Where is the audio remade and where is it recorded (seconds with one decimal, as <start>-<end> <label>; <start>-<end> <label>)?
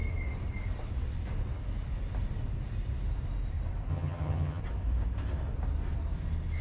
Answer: 0.0-3.9 recorded; 3.9-4.6 remade; 4.6-6.6 recorded